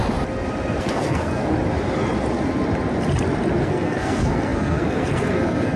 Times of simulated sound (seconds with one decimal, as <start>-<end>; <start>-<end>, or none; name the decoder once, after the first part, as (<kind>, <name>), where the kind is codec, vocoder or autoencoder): 0.8-1.4 (codec, SNAC); 3.6-5.8